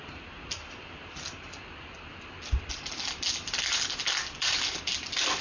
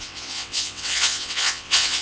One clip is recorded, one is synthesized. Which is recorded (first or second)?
first